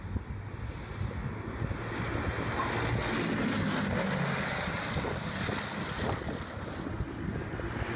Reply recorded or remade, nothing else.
recorded